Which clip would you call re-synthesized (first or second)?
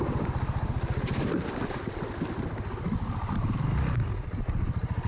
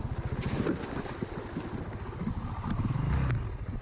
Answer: first